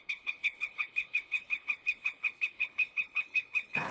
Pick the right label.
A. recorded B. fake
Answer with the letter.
B